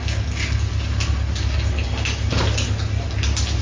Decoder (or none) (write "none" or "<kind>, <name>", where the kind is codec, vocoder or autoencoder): none